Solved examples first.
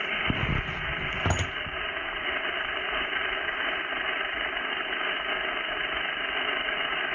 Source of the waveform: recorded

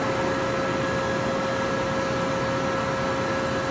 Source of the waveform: recorded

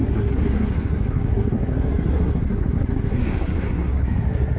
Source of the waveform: remade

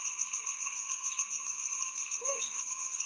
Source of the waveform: remade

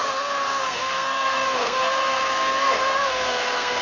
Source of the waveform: remade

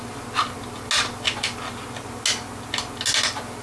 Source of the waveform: recorded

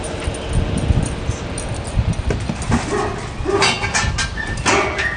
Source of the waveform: recorded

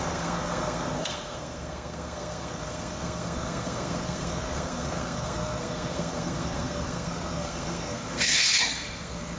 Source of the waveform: remade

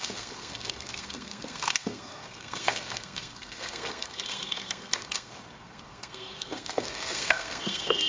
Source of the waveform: remade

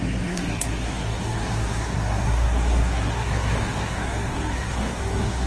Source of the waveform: remade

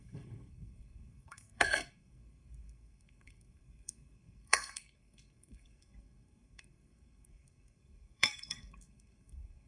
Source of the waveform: remade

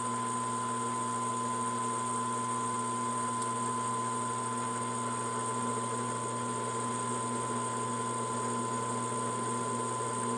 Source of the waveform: recorded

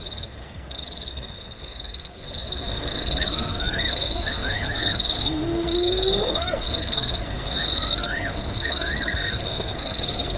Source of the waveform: remade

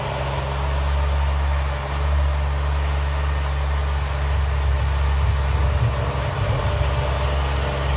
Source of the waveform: recorded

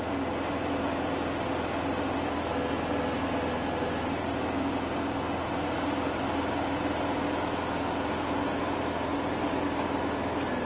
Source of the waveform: recorded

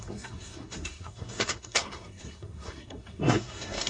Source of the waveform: remade